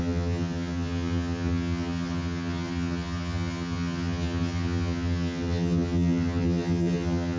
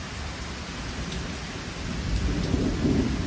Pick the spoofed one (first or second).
first